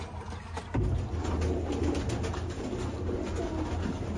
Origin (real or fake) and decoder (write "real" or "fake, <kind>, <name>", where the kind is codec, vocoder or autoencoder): real